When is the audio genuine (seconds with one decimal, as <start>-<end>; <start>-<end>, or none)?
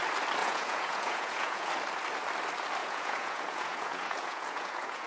0.0-0.4; 1.7-2.8